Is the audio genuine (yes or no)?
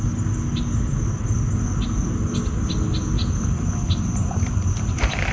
yes